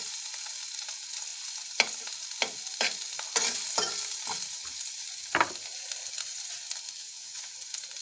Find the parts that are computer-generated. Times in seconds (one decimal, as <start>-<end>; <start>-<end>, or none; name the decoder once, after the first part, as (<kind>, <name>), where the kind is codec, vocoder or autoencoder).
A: 7.0-7.5 (vocoder, WaveNeXt)